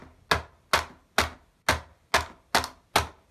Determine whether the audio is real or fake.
real